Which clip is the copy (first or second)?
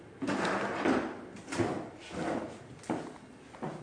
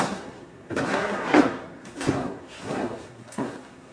second